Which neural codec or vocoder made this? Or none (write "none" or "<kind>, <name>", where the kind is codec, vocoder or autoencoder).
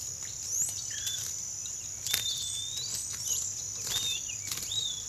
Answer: none